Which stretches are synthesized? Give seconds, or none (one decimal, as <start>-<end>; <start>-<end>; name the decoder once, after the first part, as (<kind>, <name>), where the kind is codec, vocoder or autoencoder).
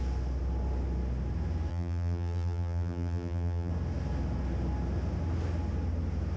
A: 1.7-3.7 (vocoder, BigVGAN v2)